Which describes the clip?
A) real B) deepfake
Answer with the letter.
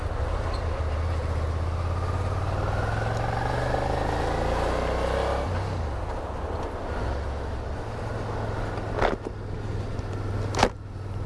A